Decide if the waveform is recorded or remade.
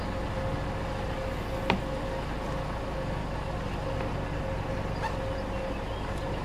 recorded